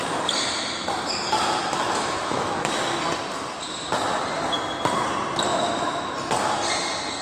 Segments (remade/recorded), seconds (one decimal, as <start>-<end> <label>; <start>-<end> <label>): 0.0-1.6 recorded; 1.6-2.8 remade; 2.8-5.5 recorded; 5.5-6.1 remade; 6.1-7.2 recorded